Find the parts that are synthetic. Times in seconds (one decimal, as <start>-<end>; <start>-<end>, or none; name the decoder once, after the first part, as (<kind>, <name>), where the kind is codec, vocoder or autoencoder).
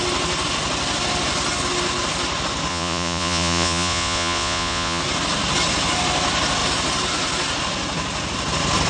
2.7-5.0 (vocoder, Vocos)